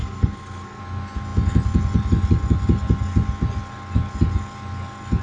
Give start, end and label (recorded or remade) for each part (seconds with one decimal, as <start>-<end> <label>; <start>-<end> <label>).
0.0-0.8 remade; 0.8-5.2 recorded